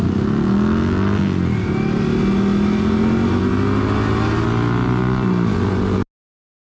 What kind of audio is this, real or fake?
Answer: real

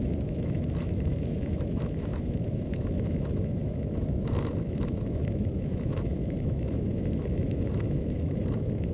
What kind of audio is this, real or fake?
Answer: fake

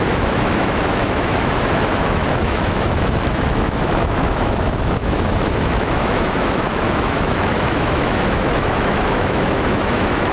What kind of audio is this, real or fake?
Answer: fake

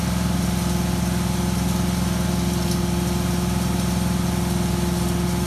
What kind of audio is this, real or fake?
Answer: real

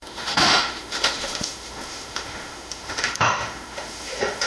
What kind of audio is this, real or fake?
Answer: fake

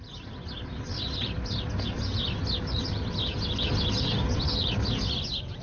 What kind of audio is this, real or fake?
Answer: real